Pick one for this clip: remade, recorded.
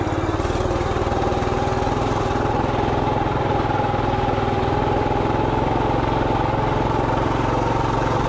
recorded